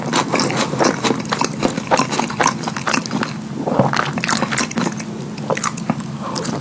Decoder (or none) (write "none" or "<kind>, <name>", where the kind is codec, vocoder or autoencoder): none